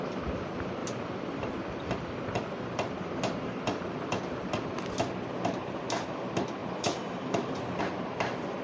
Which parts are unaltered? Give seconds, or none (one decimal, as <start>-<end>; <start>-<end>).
0.0-0.8; 4.2-6.6; 7.8-8.6